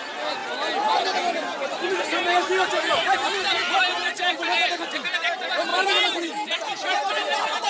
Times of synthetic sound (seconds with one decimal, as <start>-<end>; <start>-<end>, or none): 5.7-7.1